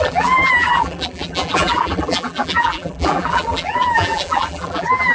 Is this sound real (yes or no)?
no